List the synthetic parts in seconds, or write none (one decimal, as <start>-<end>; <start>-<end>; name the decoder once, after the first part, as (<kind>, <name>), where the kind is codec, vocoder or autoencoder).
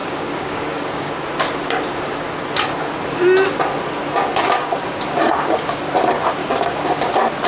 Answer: 0.0-1.1 (codec, DAC); 4.3-5.8; 6.4-7.1